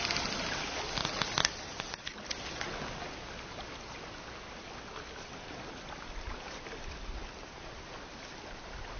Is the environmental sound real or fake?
real